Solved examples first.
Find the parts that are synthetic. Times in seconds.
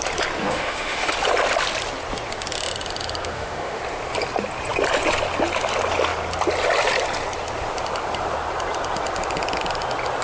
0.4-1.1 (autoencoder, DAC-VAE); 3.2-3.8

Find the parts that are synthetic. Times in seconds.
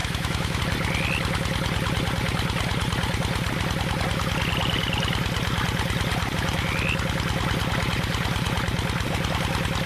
0.0-0.6 (autoencoder, DAC-VAE)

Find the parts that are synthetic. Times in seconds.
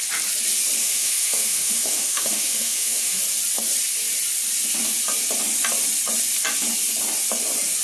0.8-3.2 (autoencoder, DAC-VAE)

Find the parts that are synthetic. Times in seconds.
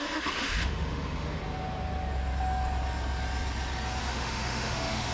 0.0-1.4 (autoencoder, DAC-VAE); 4.0-5.1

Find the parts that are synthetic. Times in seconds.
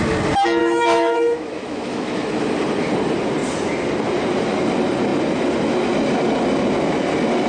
0.6-2.4 (autoencoder, DAC-VAE)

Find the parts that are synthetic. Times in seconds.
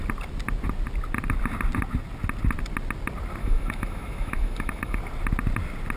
3.4-5.0 (autoencoder, DAC-VAE)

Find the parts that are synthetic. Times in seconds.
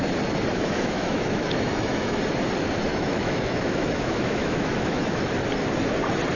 0.5-2.2 (autoencoder, DAC-VAE); 2.9-5.2